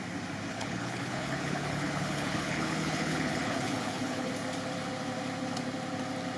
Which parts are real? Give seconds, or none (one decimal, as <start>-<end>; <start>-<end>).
0.0-0.5; 4.3-6.4